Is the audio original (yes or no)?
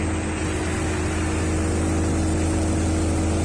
yes